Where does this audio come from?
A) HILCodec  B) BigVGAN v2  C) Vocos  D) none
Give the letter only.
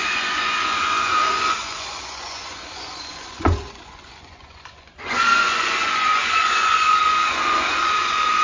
C